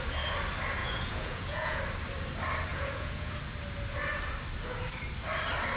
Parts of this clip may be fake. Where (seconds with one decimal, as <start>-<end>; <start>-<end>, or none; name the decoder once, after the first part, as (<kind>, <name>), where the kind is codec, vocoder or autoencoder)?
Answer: 0.8-1.8 (vocoder, Vocos); 2.7-3.3